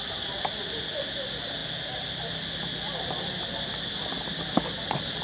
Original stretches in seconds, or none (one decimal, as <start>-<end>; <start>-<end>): 0.0-5.2